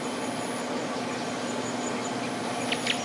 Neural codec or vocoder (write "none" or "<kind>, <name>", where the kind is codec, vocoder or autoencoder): none